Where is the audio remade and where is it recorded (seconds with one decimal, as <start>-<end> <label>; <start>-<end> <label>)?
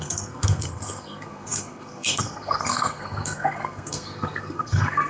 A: 0.0-5.1 remade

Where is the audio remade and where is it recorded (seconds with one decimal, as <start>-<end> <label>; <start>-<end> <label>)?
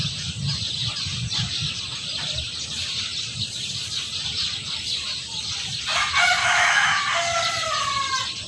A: 0.0-6.4 recorded; 6.4-7.0 remade; 7.0-8.5 recorded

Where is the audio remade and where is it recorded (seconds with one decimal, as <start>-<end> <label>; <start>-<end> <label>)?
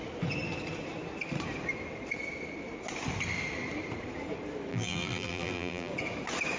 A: 0.0-4.7 recorded; 4.7-5.9 remade; 5.9-6.6 recorded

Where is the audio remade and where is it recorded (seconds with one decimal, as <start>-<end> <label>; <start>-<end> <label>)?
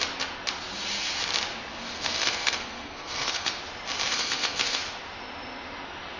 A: 0.0-1.7 recorded; 1.7-3.6 remade; 3.6-4.1 recorded; 4.1-4.8 remade; 4.8-6.2 recorded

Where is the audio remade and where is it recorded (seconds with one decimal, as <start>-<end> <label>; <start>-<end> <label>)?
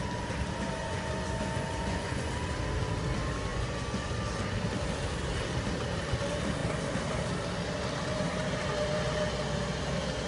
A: 0.0-0.8 recorded; 0.8-2.3 remade; 2.3-3.5 recorded; 3.5-4.2 remade; 4.2-10.3 recorded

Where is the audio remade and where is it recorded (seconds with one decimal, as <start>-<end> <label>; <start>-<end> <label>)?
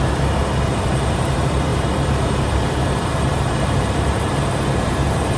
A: 0.0-5.4 remade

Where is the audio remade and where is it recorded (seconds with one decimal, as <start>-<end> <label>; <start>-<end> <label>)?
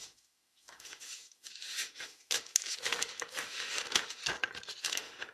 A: 0.0-4.2 remade; 4.2-4.8 recorded; 4.8-5.3 remade